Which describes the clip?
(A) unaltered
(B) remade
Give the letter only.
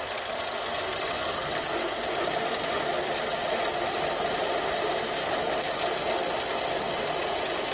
A